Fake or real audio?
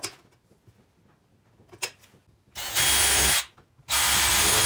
real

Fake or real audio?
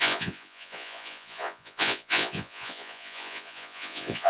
fake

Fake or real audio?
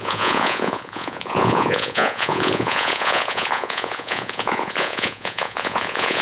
fake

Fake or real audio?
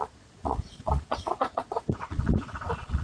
fake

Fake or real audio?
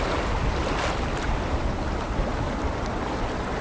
real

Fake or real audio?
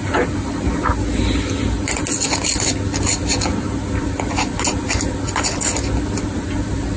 real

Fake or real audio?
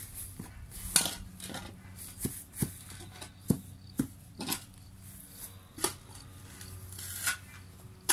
real